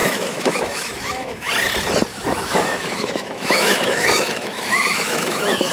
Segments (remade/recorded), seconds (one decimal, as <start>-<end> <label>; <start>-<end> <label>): 0.0-1.5 remade; 1.5-2.1 recorded; 2.1-5.7 remade